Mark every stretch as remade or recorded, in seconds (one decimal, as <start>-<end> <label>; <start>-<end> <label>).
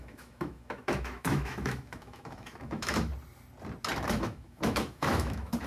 0.0-3.1 remade; 3.1-4.1 recorded; 4.1-5.7 remade